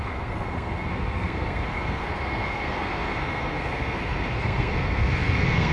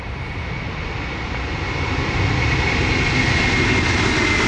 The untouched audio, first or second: second